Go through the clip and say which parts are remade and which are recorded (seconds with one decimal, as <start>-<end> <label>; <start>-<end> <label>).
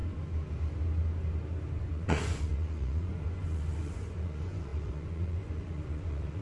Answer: 0.0-1.9 recorded; 1.9-6.4 remade